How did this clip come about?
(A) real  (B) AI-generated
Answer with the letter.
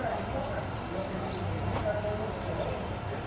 A